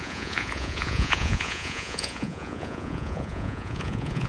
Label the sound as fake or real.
fake